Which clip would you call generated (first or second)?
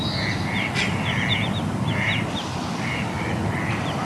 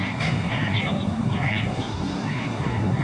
second